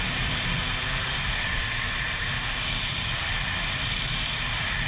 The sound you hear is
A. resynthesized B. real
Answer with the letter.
A